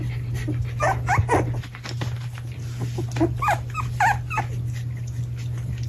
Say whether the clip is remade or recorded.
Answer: recorded